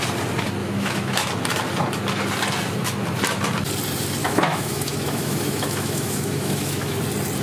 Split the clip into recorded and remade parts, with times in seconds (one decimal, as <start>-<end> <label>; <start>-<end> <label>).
0.0-0.6 recorded; 0.6-1.3 remade; 1.3-4.2 recorded; 4.2-7.0 remade; 7.0-7.4 recorded